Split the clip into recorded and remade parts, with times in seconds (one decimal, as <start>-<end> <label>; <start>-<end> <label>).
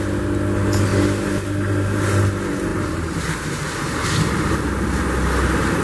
0.0-0.9 recorded; 0.9-2.2 remade; 2.2-2.7 recorded; 2.7-4.3 remade; 4.3-5.8 recorded